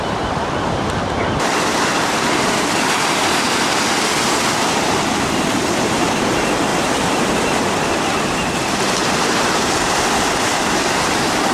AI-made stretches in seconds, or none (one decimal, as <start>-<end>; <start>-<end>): 6.7-10.2